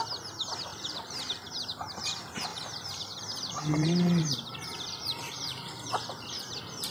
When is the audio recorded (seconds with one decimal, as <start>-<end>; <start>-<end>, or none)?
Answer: 0.0-0.7; 2.0-2.5

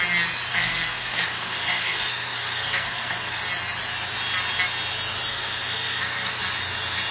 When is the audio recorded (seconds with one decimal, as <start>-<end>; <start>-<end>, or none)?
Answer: 0.0-0.5; 3.4-5.3; 6.4-7.1

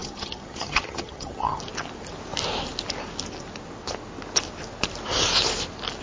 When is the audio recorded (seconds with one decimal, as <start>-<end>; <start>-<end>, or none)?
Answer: 1.6-6.0

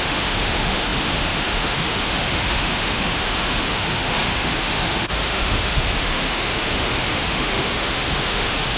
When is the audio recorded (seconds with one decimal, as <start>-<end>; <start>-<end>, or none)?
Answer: none